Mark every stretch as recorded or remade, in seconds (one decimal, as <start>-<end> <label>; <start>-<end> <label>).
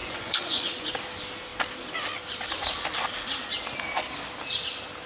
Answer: 0.0-0.9 remade; 0.9-5.1 recorded